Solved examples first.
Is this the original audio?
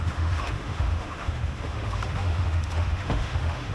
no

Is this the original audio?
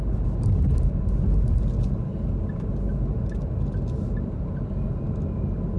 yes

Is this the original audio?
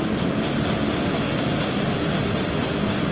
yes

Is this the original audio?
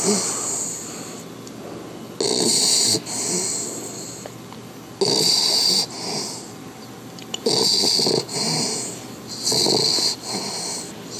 yes